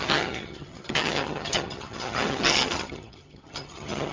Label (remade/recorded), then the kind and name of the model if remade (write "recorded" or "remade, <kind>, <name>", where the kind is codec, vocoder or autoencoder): remade, vocoder, HiFi-GAN